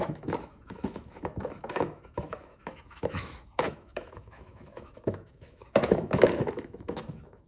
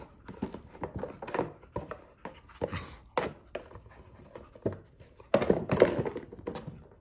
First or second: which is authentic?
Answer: second